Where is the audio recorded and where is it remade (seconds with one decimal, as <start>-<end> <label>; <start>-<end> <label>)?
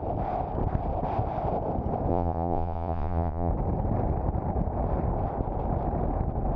0.0-2.1 recorded; 2.1-3.5 remade; 3.5-6.6 recorded